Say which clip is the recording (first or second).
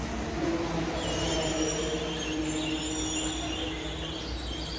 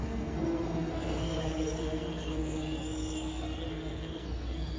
first